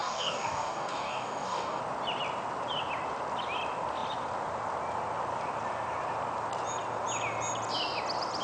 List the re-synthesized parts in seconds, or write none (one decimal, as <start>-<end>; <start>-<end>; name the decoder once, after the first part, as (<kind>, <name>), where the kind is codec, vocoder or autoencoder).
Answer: 0.0-1.8 (codec, DAC)

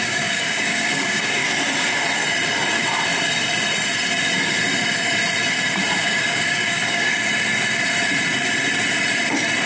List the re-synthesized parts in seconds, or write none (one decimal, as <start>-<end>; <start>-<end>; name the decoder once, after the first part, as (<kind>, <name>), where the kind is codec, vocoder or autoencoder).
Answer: 0.0-1.4 (codec, DAC); 6.0-7.2

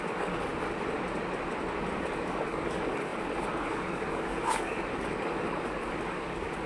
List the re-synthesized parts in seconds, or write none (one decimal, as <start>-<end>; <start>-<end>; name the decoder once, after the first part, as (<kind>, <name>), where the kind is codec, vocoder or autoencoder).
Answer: 0.0-0.5 (codec, DAC); 2.0-6.7

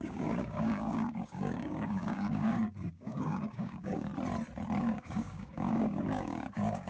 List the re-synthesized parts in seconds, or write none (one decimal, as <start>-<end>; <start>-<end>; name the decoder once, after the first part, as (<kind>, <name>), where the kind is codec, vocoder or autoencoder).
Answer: 0.0-4.1 (codec, DAC); 4.8-6.9